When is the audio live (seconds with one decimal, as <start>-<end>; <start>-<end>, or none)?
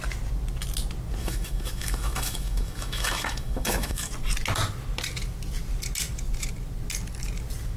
0.0-1.2; 4.1-7.8